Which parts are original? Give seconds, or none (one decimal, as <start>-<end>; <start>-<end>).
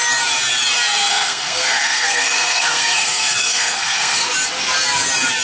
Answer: 0.0-1.1; 4.3-5.4